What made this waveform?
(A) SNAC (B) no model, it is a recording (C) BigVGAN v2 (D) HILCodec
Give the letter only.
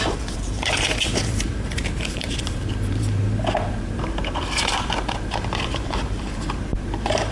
C